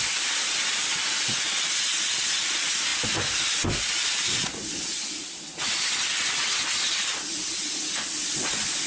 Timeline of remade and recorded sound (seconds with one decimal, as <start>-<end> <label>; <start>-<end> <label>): 0.0-8.9 recorded